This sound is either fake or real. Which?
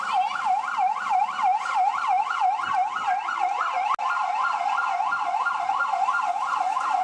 real